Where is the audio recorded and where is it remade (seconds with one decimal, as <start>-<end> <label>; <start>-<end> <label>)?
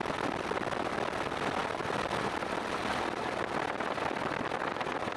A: 0.0-5.2 recorded